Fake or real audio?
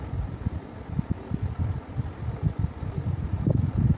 fake